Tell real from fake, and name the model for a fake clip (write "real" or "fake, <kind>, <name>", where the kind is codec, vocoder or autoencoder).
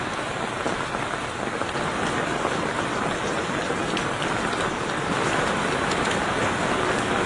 real